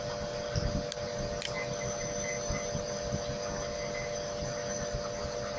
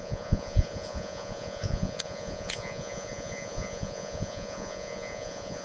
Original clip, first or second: first